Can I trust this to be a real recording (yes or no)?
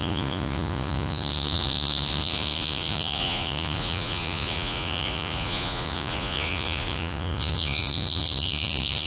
no